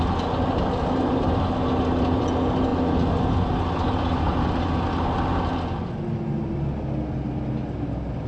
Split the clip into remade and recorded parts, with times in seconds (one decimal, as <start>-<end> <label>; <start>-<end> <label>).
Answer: 0.0-8.3 recorded